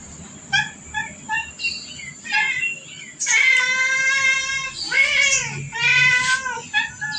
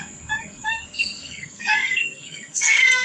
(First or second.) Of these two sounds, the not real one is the second